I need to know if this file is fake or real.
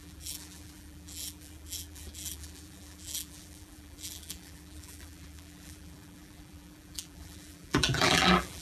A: fake